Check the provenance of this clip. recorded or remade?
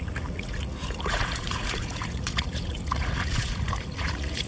remade